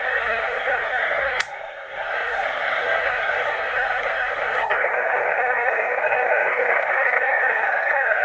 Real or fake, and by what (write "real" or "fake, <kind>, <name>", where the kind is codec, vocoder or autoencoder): fake, codec, SNAC